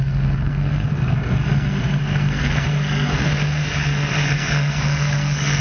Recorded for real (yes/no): no